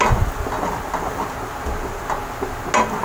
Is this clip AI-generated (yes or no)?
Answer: no